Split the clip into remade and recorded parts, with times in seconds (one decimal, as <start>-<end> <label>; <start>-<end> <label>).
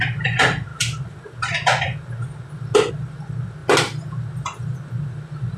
0.0-5.6 recorded